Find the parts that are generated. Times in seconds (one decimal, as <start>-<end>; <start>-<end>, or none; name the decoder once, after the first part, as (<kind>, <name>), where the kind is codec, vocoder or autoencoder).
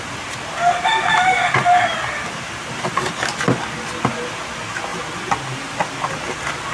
none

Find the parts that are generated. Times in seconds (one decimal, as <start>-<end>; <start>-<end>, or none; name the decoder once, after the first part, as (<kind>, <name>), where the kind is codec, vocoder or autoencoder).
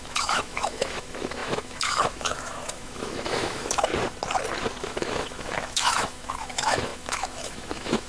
0.0-3.9 (autoencoder, DAC-VAE); 4.8-8.1